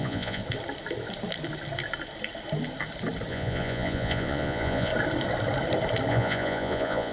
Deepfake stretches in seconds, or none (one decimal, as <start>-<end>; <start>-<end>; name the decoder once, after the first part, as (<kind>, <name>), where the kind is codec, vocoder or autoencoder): 0.0-0.4 (vocoder, Vocos); 3.3-4.9; 6.1-7.1